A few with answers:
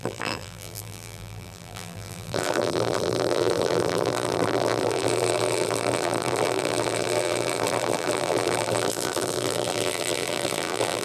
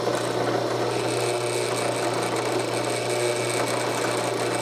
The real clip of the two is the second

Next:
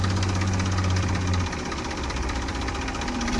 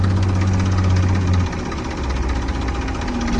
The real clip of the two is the second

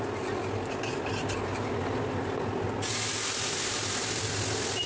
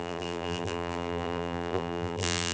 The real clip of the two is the first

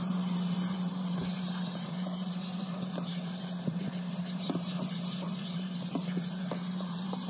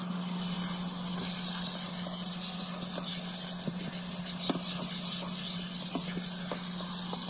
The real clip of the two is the second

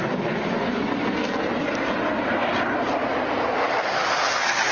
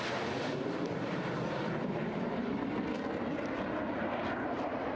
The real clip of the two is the first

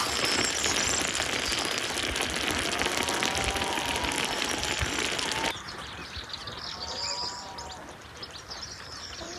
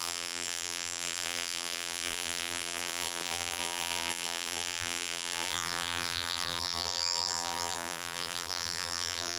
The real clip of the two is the first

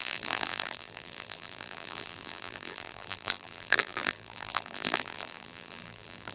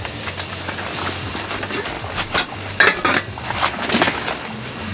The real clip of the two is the second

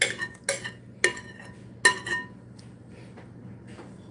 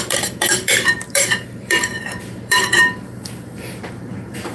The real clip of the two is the first